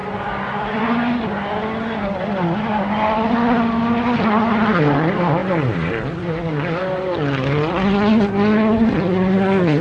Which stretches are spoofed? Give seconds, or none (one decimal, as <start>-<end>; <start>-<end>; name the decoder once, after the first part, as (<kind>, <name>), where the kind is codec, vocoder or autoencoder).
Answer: none